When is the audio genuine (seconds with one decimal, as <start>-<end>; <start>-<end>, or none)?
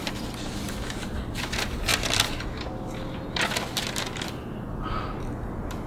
0.0-5.9